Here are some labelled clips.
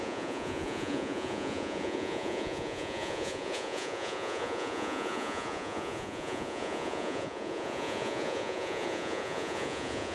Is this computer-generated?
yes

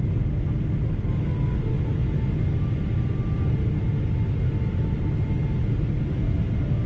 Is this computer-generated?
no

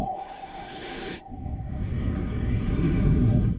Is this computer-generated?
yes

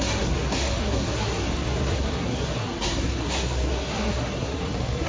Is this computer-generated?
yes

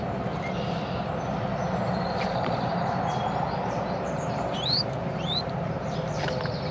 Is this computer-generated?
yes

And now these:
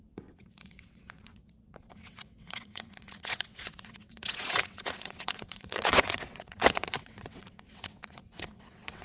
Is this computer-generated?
yes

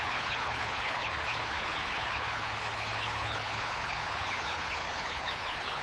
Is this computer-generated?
yes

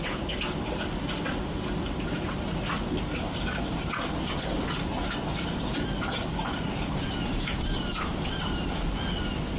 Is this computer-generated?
no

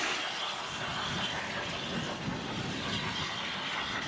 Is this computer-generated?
no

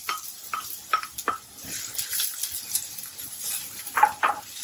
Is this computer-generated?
no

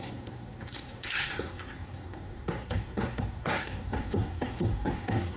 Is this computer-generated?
yes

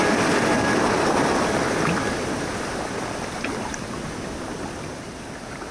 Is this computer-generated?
no